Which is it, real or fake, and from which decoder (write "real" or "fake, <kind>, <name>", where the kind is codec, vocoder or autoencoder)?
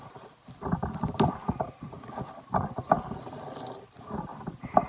real